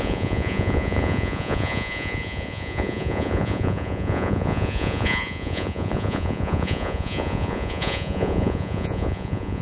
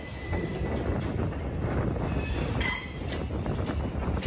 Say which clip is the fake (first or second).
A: first